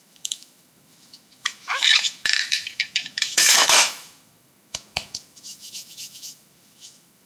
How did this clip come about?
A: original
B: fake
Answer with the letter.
B